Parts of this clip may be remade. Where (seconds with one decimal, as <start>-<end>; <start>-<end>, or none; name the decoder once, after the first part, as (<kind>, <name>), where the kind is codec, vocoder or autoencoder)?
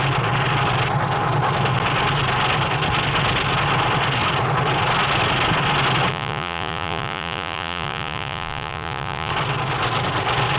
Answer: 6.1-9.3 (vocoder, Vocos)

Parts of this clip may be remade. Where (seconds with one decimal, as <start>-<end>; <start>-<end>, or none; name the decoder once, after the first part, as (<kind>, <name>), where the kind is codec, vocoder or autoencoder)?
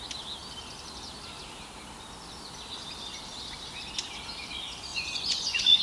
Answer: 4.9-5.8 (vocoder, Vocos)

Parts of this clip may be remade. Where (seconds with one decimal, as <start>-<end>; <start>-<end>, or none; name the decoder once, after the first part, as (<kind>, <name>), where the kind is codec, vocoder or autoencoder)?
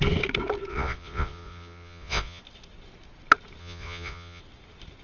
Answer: 0.7-2.4 (vocoder, Vocos); 3.6-4.4